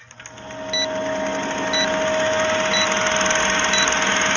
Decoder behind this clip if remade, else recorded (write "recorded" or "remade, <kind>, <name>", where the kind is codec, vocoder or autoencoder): recorded